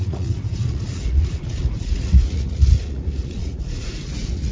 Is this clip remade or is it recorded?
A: remade